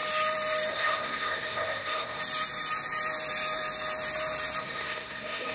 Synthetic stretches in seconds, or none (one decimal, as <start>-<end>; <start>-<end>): 0.7-2.2; 4.6-5.5